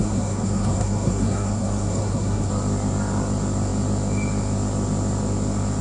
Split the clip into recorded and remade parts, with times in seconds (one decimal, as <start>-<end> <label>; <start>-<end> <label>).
0.0-2.5 remade; 2.5-5.8 recorded